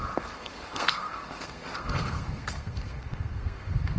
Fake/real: fake